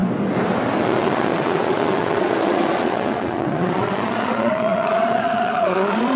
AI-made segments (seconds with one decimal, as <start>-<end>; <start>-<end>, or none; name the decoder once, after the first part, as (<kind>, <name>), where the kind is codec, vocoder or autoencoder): 0.8-6.2 (vocoder, Vocos)